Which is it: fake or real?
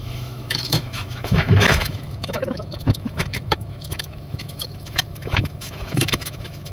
fake